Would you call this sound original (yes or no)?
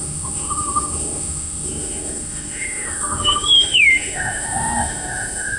no